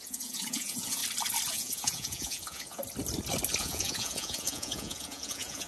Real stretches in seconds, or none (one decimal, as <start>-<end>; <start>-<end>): 1.0-1.5; 2.8-3.6